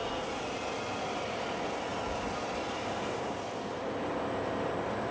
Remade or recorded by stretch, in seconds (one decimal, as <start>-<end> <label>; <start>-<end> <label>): 0.0-5.1 remade